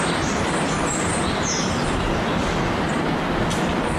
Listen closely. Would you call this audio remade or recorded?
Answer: recorded